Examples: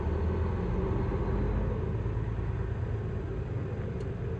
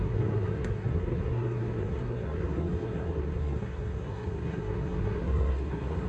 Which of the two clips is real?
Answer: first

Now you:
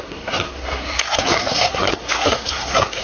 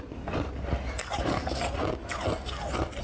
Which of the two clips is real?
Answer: second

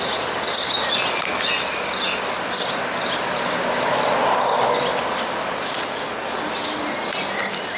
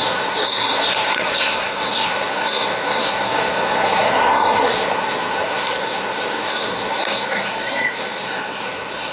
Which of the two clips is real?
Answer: first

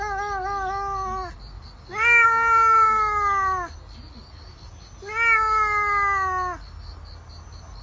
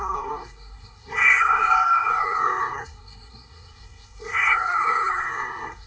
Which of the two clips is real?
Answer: first